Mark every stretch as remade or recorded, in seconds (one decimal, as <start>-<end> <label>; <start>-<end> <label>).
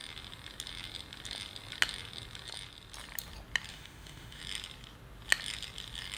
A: 0.0-3.7 recorded; 3.7-4.4 remade; 4.4-6.2 recorded